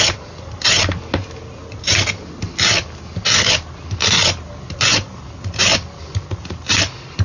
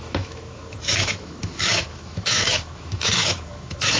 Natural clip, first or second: first